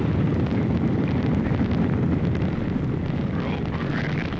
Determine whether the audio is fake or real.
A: fake